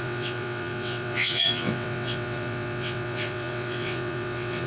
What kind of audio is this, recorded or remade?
remade